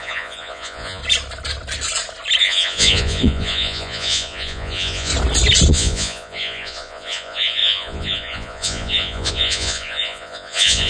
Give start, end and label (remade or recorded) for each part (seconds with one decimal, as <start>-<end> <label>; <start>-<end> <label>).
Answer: 0.0-1.0 remade; 1.0-2.4 recorded; 2.4-5.1 remade; 5.1-5.7 recorded; 5.7-10.9 remade